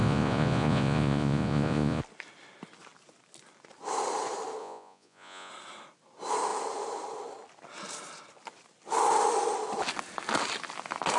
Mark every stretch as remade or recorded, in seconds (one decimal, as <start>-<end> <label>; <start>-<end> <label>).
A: 0.0-2.0 remade; 2.0-4.6 recorded; 4.6-5.5 remade; 5.5-11.2 recorded